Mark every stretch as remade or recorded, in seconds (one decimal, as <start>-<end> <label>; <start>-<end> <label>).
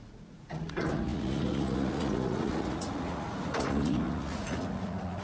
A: 0.0-5.2 remade